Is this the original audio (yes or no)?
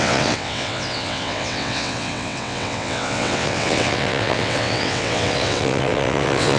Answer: no